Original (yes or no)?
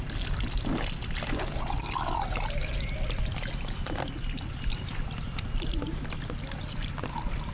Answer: yes